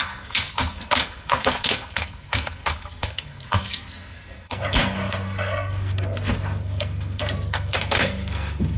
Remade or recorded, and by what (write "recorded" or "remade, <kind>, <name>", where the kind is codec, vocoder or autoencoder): remade, codec, SNAC